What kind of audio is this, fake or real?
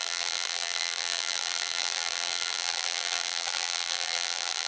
fake